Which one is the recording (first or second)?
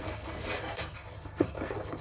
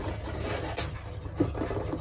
second